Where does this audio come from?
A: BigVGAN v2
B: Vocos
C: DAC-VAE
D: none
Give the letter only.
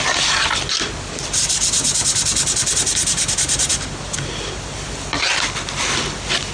D